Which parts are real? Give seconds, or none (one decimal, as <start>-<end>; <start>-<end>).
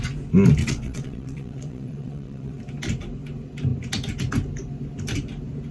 0.0-0.6; 2.6-5.7